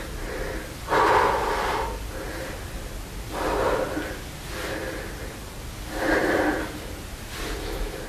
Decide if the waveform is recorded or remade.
recorded